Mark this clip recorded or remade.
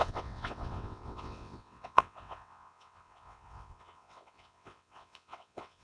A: remade